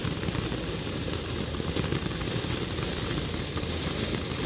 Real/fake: real